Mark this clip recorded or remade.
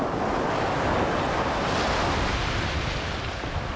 recorded